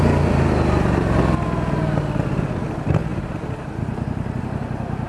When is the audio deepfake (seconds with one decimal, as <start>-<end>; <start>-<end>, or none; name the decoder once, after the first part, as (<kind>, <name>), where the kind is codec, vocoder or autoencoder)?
3.1-4.4 (vocoder, BigVGAN v2)